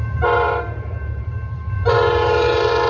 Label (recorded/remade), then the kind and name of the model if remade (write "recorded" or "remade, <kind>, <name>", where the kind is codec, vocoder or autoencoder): remade, vocoder, BigVGAN v2